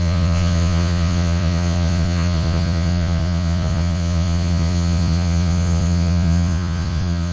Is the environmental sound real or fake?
fake